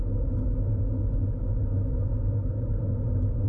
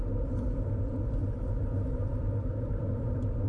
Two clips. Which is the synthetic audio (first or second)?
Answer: second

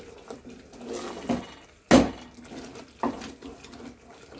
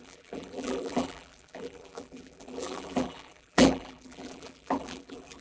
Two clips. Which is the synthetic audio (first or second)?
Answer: second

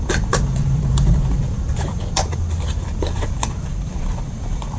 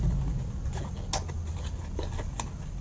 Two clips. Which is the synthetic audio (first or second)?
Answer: first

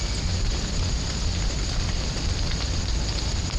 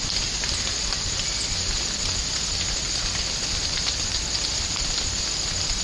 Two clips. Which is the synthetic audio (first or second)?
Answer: first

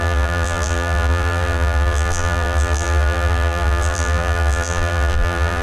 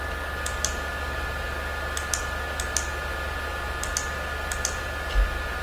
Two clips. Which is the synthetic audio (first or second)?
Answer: first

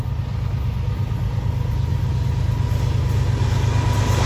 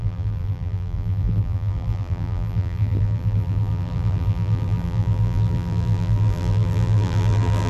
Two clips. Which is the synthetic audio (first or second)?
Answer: second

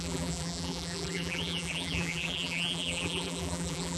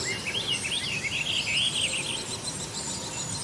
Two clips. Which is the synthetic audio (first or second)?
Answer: first